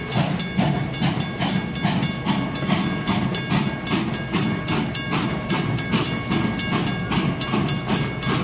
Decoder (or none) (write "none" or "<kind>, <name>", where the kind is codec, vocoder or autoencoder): none